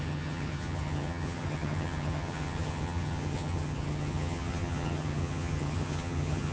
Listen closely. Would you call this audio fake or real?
fake